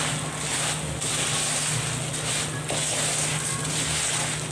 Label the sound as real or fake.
real